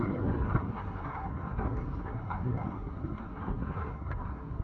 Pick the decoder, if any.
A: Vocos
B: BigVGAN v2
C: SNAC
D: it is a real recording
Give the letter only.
C